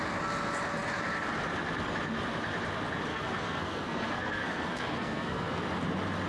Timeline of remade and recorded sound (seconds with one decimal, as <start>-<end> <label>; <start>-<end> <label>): 0.0-3.1 recorded; 3.1-5.6 remade; 5.6-6.3 recorded